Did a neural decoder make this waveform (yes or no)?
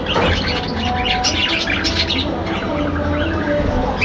no